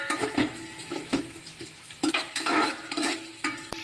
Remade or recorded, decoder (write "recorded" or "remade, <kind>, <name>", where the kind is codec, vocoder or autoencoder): remade, autoencoder, DAC-VAE